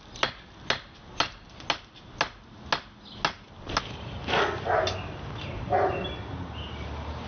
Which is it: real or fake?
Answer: real